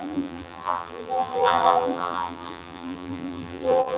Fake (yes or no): yes